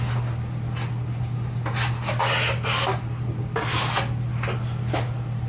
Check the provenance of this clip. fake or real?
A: real